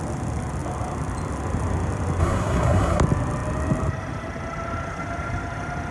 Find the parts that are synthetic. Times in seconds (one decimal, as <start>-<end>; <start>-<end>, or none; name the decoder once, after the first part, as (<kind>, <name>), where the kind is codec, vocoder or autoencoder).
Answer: 2.2-3.0 (codec, SNAC)

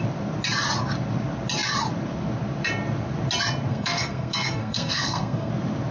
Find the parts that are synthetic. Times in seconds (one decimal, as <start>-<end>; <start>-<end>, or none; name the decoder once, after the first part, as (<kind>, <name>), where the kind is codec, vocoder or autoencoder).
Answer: 3.7-5.5 (codec, SNAC)

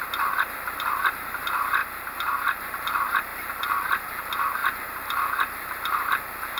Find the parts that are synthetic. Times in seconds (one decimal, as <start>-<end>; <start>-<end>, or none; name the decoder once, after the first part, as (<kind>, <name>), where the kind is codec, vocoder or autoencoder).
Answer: 0.0-1.0 (vocoder, BigVGAN v2); 3.3-4.0; 4.6-6.1

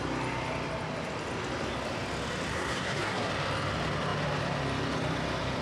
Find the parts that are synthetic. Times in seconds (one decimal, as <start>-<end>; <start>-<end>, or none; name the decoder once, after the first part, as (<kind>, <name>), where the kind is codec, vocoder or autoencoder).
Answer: 2.5-3.3 (codec, SNAC)

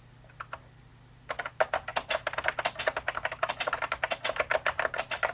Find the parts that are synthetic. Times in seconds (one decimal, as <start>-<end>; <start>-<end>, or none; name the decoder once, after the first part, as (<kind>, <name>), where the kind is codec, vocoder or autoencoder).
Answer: none

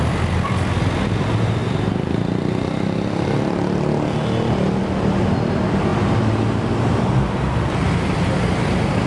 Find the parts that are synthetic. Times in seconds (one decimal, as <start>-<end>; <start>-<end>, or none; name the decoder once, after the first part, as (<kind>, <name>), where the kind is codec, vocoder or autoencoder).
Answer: none

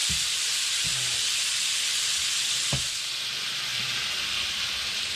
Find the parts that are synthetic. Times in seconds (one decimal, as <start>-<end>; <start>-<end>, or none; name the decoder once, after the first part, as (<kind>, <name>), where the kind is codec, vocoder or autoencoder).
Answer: none